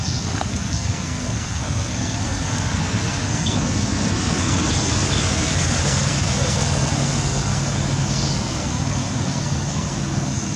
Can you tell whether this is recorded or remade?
remade